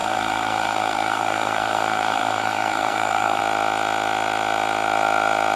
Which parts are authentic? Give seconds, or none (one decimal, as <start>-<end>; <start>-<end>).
3.4-5.6